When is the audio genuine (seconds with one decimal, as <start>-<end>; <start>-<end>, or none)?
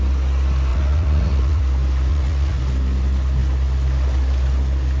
0.0-0.7; 1.6-2.1; 2.6-5.0